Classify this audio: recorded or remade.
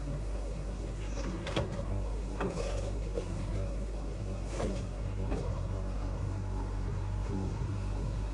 remade